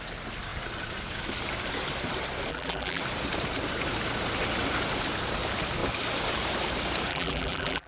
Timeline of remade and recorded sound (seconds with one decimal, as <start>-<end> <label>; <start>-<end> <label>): 0.0-2.5 recorded; 2.5-3.0 remade; 3.0-7.1 recorded; 7.1-7.9 remade